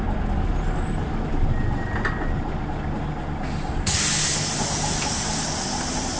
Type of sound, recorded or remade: recorded